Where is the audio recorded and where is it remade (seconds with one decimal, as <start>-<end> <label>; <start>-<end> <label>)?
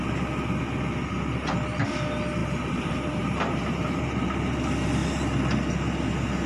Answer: 0.0-2.4 recorded; 2.4-4.5 remade; 4.5-6.5 recorded